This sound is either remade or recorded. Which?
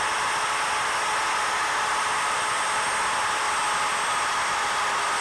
recorded